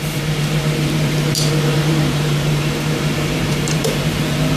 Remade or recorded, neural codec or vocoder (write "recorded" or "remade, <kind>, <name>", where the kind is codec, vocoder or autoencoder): remade, vocoder, BigVGAN v2